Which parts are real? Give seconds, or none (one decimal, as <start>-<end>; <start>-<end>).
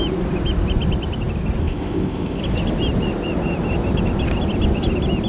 0.0-1.6; 2.4-5.3